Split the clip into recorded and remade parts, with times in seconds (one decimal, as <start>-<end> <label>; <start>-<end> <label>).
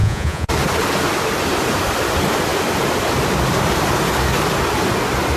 0.0-0.5 remade; 0.5-5.4 recorded